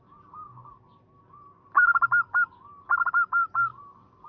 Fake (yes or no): yes